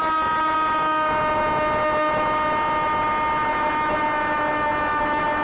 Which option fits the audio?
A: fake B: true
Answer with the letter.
B